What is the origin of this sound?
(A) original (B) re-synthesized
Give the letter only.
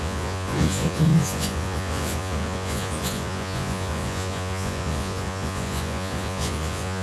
B